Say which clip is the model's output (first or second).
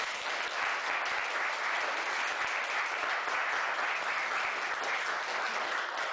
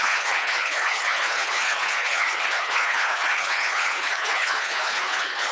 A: second